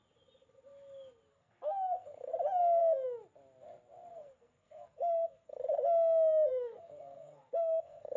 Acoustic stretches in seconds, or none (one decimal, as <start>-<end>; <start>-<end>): 0.0-1.3; 2.3-4.1; 5.6-6.5